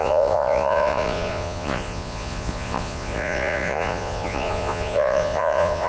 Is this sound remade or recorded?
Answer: remade